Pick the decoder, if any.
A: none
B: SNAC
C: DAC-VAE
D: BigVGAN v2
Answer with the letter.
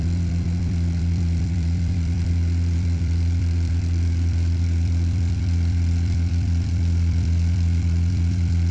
D